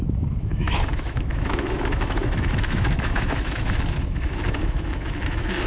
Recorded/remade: remade